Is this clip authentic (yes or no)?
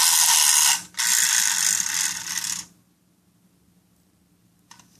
yes